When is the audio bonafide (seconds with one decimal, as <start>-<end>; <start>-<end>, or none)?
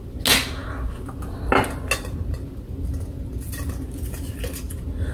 0.0-5.1